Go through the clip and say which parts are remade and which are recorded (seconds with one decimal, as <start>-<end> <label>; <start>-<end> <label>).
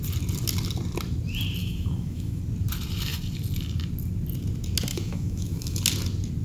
0.0-1.6 recorded; 1.6-2.4 remade; 2.4-4.9 recorded; 4.9-5.8 remade; 5.8-6.4 recorded